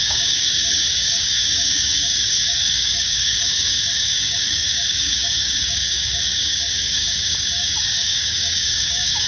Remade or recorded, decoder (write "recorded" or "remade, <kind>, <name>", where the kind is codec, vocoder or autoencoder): remade, codec, DAC